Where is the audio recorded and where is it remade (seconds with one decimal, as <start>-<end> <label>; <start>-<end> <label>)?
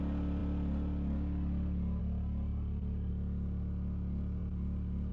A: 0.0-2.5 recorded; 2.5-3.1 remade; 3.1-4.4 recorded; 4.4-5.1 remade